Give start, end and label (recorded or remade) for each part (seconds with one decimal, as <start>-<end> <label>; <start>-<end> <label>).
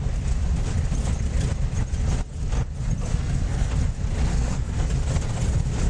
0.0-3.1 recorded; 3.1-3.7 remade; 3.7-4.3 recorded; 4.3-4.9 remade; 4.9-5.9 recorded